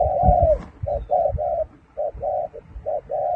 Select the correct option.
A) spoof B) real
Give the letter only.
B